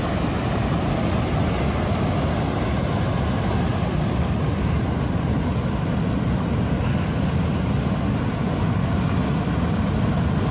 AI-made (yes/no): no